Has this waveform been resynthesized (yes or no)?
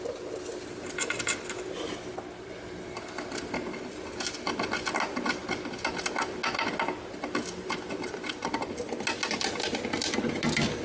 no